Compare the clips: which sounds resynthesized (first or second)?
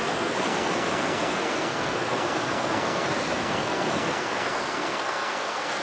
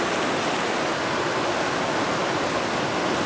first